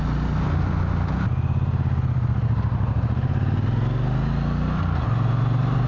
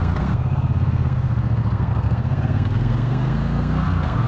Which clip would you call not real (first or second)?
second